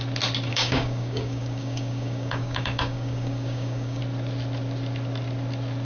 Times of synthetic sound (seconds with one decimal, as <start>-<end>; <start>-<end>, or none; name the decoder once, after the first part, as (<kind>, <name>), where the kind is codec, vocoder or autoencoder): 0.5-4.0 (codec, DAC)